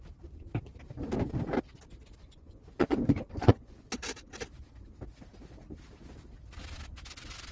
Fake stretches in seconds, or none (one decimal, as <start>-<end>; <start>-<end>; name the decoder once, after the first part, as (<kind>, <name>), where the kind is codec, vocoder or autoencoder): 2.2-3.9 (vocoder, Vocos)